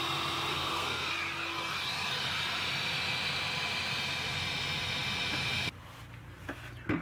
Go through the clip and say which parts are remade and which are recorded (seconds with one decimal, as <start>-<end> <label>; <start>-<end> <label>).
0.0-0.5 recorded; 0.5-1.1 remade; 1.1-7.0 recorded